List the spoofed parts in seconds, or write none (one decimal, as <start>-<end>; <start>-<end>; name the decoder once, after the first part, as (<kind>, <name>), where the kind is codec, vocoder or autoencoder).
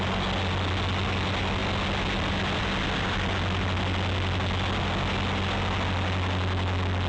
none